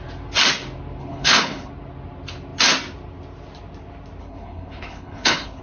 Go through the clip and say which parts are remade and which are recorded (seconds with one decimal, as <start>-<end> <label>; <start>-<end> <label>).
0.0-1.0 recorded; 1.0-1.7 remade; 1.7-4.2 recorded; 4.2-5.6 remade